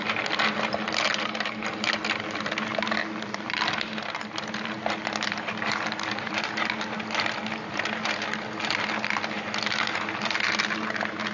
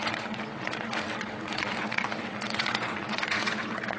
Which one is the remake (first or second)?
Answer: second